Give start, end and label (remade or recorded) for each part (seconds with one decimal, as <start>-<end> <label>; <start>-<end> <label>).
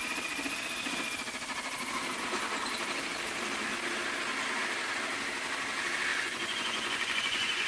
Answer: 0.0-6.1 recorded; 6.1-7.7 remade